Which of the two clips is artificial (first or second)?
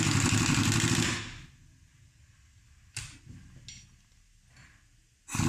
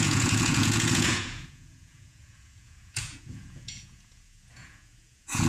second